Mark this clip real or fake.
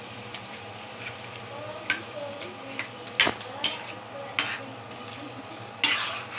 real